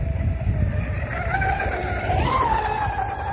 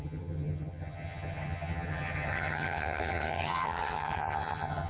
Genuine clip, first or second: first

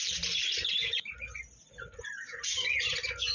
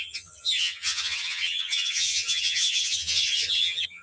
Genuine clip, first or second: first